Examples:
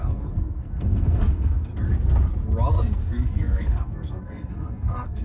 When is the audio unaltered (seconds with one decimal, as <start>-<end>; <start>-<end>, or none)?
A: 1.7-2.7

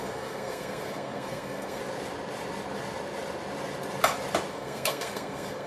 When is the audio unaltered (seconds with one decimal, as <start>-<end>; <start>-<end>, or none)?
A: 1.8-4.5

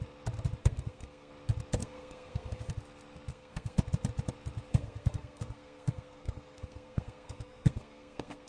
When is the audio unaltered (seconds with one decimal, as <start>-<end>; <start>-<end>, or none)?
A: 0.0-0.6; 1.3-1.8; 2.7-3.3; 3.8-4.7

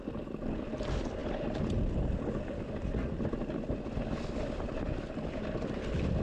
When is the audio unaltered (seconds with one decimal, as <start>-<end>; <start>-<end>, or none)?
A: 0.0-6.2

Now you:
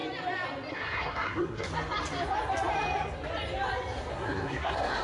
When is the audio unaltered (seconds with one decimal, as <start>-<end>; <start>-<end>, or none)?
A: 0.0-0.7; 1.7-4.1

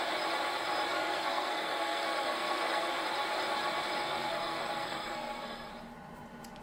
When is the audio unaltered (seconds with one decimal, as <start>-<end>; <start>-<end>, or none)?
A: 0.0-0.9; 3.0-4.0; 5.7-6.6

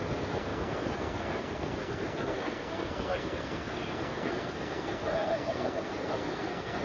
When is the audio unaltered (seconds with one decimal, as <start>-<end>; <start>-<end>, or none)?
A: none

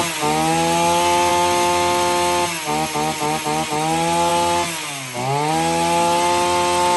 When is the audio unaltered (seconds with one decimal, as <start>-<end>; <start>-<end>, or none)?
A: 0.0-7.0